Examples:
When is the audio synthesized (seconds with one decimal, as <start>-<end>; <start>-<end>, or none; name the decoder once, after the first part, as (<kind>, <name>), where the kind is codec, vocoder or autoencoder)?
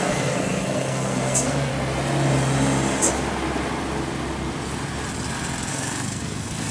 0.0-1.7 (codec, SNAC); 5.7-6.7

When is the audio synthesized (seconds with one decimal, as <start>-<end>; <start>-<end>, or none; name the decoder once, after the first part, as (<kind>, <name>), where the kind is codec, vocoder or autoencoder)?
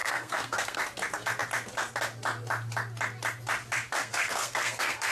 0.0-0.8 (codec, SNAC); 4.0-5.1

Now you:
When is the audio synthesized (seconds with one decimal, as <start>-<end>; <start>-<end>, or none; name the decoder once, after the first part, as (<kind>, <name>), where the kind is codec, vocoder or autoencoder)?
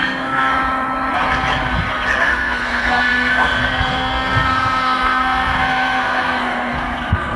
0.0-0.5 (codec, SNAC); 2.2-7.4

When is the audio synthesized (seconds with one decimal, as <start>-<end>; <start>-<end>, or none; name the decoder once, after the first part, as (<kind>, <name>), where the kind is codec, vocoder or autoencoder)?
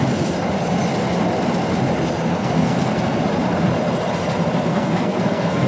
2.3-3.2 (codec, SNAC); 4.7-5.7